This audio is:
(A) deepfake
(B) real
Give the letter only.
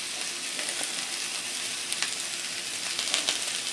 B